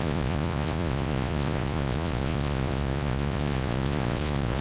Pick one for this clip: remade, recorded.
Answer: remade